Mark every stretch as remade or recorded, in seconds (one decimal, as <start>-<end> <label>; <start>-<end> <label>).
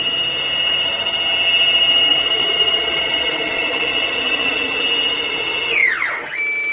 0.0-2.1 recorded; 2.1-4.8 remade; 4.8-6.7 recorded